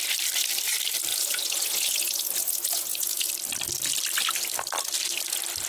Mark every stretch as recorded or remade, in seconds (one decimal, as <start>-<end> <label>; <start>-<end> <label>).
0.0-1.1 recorded; 1.1-3.3 remade; 3.3-5.7 recorded